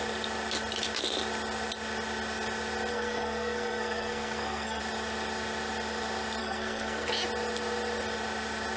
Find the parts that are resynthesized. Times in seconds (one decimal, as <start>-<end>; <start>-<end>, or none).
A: 2.9-4.8; 6.4-7.1